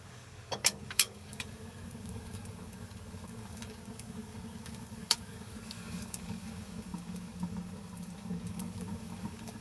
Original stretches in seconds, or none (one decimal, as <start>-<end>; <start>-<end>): none

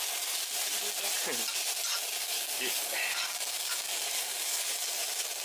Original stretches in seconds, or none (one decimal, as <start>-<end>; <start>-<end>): 0.0-2.2; 4.7-5.4

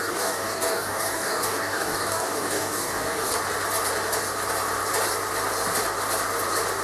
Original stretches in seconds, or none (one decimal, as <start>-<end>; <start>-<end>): 3.3-6.8

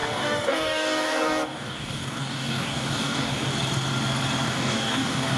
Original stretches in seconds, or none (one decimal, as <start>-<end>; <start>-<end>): 3.5-4.5

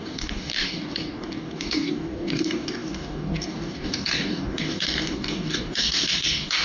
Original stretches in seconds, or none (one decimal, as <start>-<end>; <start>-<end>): none

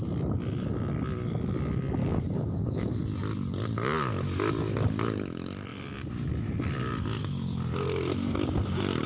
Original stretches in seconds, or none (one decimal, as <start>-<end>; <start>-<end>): 0.0-2.0; 3.0-9.1

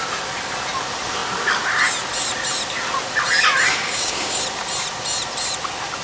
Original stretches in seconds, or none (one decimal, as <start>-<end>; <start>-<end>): 0.0-3.7; 4.4-6.0